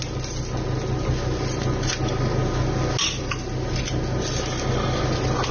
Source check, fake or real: real